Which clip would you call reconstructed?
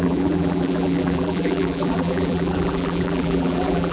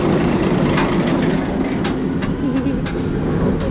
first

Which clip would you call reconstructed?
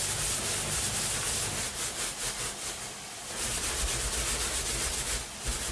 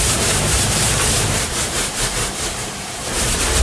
second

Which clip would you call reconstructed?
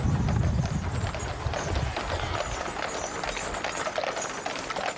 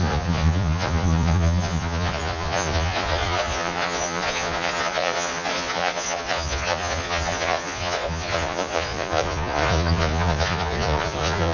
second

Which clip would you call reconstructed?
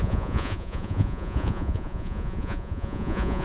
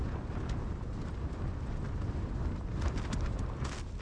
first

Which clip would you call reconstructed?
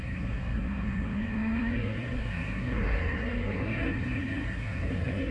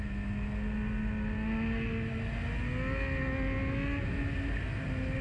first